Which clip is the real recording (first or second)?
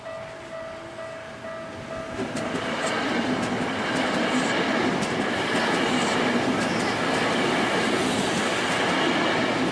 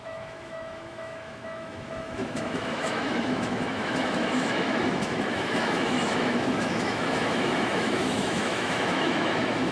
first